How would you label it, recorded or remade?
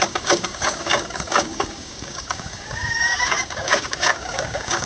remade